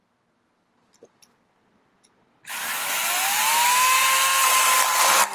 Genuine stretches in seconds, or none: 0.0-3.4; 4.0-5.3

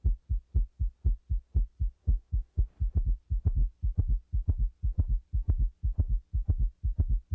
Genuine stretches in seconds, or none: 0.0-2.0; 2.6-7.3

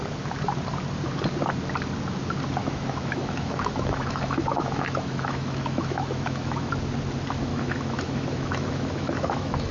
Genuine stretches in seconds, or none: 0.0-2.6; 6.7-7.5

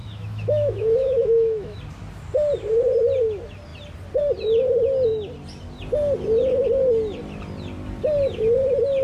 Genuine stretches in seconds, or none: 1.8-9.0